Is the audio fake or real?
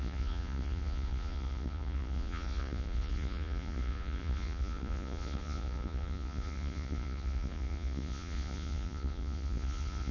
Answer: fake